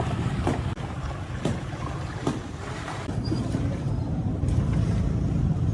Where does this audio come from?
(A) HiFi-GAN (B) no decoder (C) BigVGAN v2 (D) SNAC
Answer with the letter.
C